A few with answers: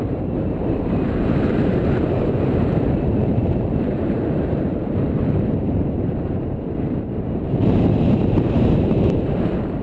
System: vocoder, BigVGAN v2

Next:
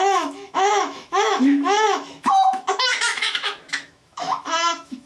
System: autoencoder, DAC-VAE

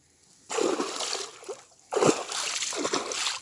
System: none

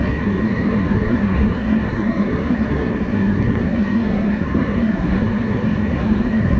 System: codec, SNAC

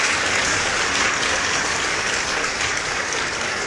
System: codec, DAC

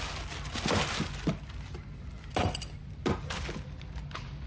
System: none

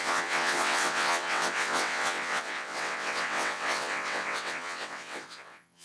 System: vocoder, WaveNeXt